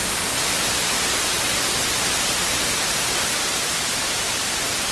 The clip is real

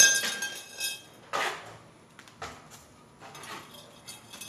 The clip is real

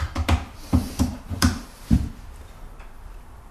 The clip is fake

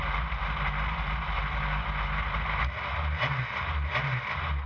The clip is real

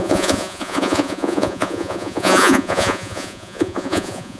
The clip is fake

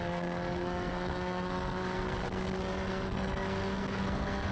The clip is fake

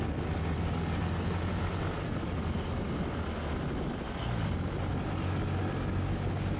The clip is real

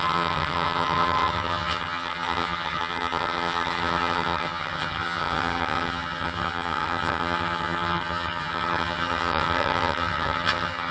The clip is fake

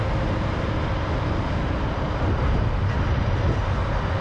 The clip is real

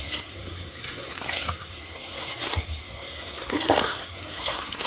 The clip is fake